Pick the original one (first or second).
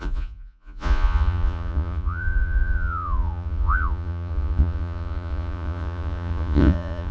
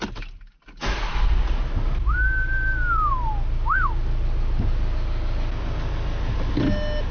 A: second